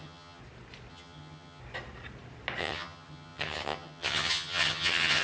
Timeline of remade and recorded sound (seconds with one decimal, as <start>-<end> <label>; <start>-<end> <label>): 0.0-0.4 remade; 0.4-0.9 recorded; 0.9-1.6 remade; 1.6-2.6 recorded; 2.6-5.2 remade

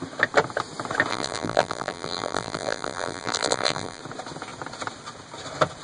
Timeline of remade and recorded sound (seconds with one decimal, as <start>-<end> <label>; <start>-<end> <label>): 0.0-1.1 recorded; 1.1-4.0 remade; 4.0-5.8 recorded